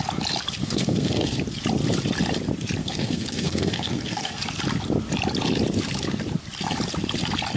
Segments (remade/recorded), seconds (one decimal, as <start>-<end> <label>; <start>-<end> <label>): 0.0-0.6 recorded; 0.6-1.4 remade; 1.4-2.8 recorded; 2.8-4.4 remade; 4.4-7.6 recorded